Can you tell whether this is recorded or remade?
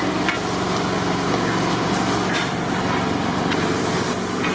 recorded